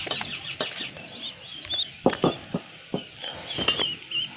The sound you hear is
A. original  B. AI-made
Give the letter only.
A